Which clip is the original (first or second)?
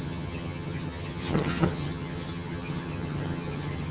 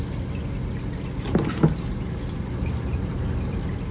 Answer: second